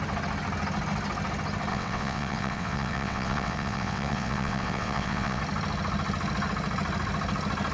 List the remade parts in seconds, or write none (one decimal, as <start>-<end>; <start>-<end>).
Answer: 1.7-5.4